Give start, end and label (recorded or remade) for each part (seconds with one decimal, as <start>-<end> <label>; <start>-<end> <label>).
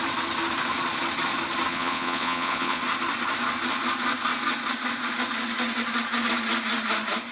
0.0-1.7 recorded; 1.7-2.8 remade; 2.8-7.3 recorded